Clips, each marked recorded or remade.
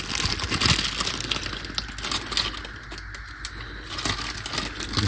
recorded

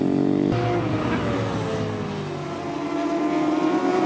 recorded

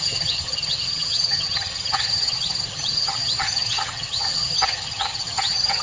remade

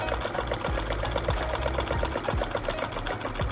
recorded